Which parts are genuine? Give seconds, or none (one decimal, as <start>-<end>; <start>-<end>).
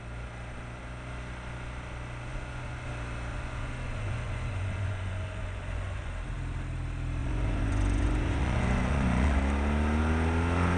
0.0-2.3; 2.9-3.3; 6.1-7.2; 9.4-10.8